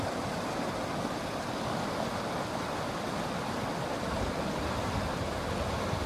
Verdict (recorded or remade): recorded